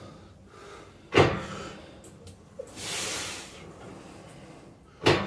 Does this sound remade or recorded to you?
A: recorded